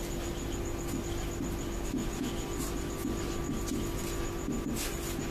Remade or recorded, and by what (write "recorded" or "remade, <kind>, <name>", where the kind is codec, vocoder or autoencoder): recorded